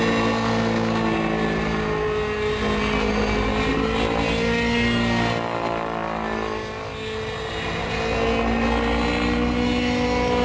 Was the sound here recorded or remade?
recorded